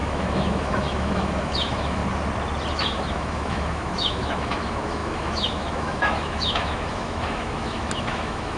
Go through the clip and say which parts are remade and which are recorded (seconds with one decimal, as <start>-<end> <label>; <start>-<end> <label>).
0.0-2.0 remade; 2.0-2.7 recorded; 2.7-8.6 remade